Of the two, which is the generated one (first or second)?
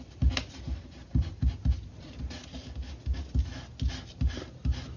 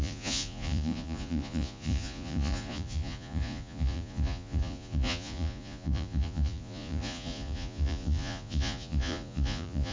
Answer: second